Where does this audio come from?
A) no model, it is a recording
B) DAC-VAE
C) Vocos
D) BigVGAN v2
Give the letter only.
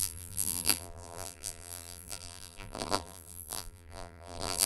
D